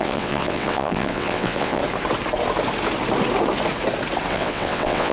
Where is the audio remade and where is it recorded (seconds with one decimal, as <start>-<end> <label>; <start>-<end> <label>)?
0.0-1.8 remade; 1.8-4.3 recorded; 4.3-5.1 remade